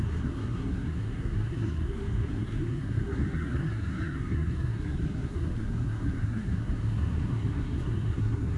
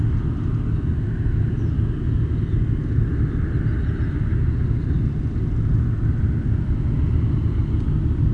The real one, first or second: second